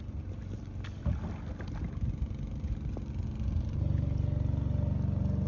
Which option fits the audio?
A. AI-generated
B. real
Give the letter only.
B